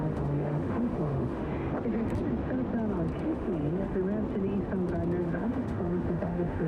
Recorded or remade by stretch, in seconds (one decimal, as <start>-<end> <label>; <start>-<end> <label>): 0.0-1.5 remade; 1.5-3.2 recorded; 3.2-4.0 remade; 4.0-5.2 recorded; 5.2-6.7 remade